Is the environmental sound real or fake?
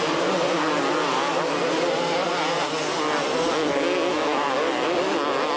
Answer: real